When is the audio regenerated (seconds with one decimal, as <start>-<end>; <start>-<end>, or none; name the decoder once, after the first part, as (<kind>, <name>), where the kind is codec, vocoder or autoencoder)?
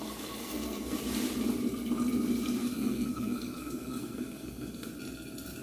0.4-1.0 (codec, SNAC); 2.6-4.9